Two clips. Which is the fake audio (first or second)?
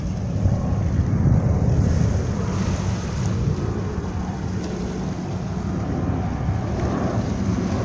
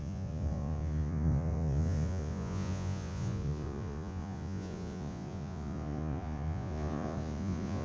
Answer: second